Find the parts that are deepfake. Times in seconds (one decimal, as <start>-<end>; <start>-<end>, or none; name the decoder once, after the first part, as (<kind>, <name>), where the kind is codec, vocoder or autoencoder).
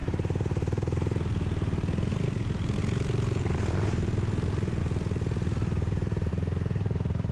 none